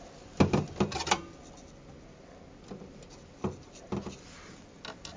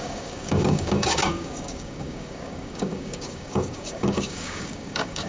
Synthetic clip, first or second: second